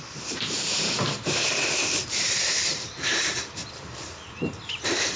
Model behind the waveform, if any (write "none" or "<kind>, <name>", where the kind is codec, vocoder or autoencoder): vocoder, BigVGAN v2